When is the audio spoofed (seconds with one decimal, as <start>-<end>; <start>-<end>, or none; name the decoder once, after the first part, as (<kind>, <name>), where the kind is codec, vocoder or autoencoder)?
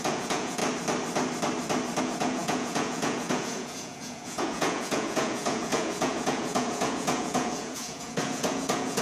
0.0-0.6 (vocoder, Vocos); 2.0-9.0